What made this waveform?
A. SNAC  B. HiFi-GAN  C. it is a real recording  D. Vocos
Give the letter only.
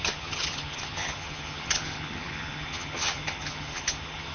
B